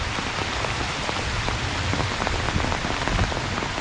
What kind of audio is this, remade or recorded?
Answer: recorded